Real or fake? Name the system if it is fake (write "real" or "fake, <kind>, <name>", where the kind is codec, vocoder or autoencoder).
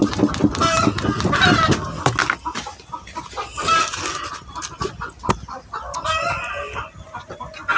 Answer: real